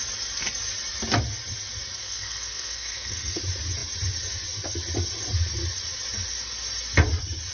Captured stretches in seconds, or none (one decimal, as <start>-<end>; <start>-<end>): 0.0-2.0; 3.4-7.5